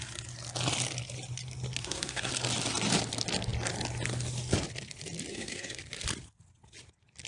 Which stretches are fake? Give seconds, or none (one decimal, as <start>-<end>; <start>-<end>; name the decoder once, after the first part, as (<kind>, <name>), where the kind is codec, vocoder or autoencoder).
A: 1.8-2.3 (codec, SNAC); 5.3-5.8

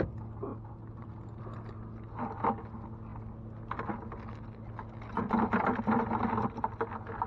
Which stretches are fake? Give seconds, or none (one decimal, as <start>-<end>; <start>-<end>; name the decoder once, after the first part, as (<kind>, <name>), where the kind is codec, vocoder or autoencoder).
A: none